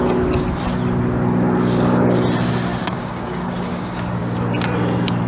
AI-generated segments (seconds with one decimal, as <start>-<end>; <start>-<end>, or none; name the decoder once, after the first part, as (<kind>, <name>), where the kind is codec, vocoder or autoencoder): 2.8-4.2 (codec, DAC)